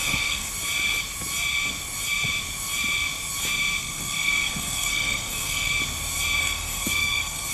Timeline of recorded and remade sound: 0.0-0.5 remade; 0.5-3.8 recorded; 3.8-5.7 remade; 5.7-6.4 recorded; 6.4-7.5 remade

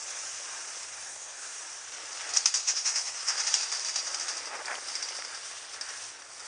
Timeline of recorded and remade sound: 0.0-0.9 recorded; 0.9-1.6 remade; 1.6-2.6 recorded; 2.6-3.4 remade; 3.4-6.5 recorded

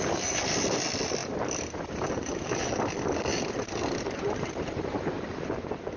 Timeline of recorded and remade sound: 0.0-6.0 recorded

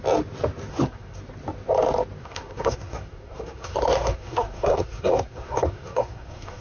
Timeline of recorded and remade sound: 0.0-0.7 recorded; 0.7-1.2 remade; 1.2-2.2 recorded; 2.2-6.6 remade

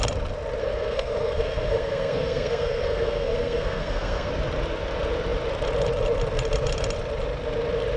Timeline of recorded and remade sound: 0.0-0.6 recorded; 0.6-4.3 remade; 4.3-8.0 recorded

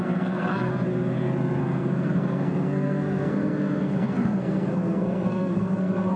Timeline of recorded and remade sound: 0.0-0.7 remade; 0.7-1.6 recorded; 1.6-6.2 remade

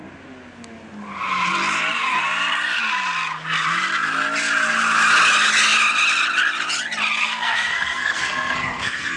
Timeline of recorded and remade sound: 0.0-7.2 recorded; 7.2-9.2 remade